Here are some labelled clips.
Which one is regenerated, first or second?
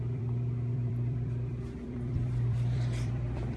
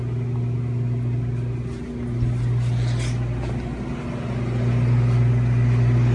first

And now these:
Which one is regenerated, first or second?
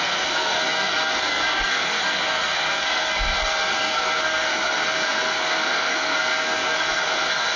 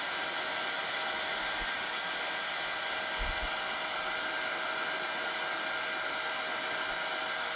first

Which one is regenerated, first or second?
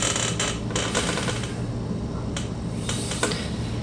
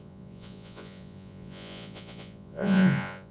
second